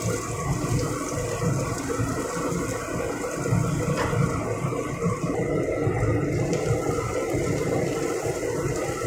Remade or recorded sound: recorded